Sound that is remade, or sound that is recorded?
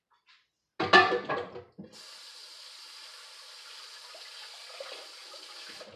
recorded